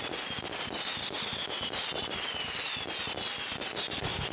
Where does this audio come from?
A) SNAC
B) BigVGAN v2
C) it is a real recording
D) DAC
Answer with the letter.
C